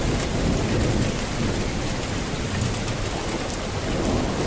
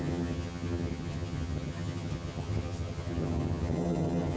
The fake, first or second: second